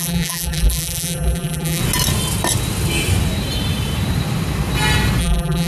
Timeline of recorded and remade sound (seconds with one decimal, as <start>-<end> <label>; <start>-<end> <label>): 0.0-1.8 remade; 1.8-5.2 recorded; 5.2-5.7 remade